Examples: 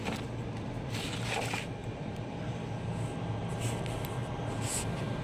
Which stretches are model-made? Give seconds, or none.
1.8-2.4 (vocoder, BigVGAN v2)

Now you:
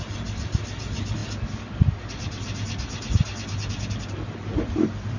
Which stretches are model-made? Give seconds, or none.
none